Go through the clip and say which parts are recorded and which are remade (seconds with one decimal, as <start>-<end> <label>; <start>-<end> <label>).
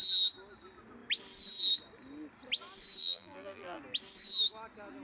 0.0-3.0 recorded; 3.0-3.8 remade; 3.8-5.0 recorded